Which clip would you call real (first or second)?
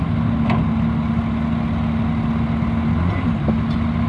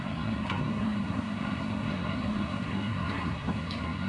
first